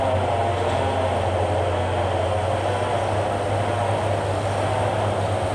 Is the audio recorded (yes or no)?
yes